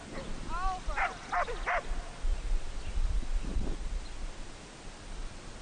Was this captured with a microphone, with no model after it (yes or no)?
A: yes